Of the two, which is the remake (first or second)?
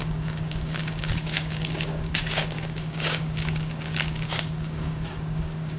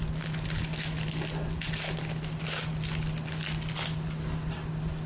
first